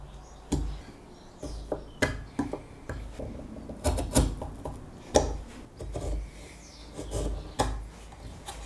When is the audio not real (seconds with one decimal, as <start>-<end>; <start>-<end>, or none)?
none